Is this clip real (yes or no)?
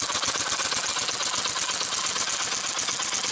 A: yes